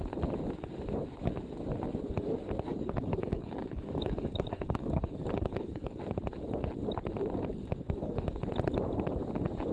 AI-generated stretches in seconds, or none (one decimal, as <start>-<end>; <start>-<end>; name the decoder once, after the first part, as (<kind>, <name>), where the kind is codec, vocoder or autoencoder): 2.7-6.0 (codec, DAC); 7.5-8.4